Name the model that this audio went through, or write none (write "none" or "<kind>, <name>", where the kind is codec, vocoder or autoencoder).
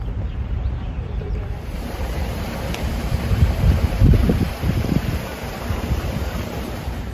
vocoder, BigVGAN v2